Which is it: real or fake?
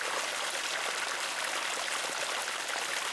real